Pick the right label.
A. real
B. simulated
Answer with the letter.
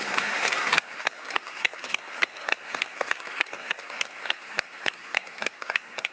B